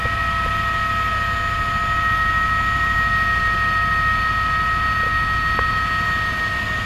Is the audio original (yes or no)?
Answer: yes